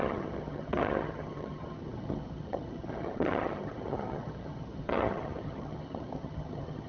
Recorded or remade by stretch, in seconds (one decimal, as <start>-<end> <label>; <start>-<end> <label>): 0.0-6.9 remade